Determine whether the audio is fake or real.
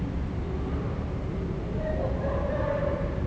real